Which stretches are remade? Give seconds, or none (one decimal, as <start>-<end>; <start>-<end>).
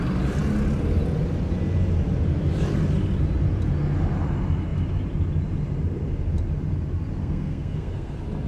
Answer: 7.2-8.1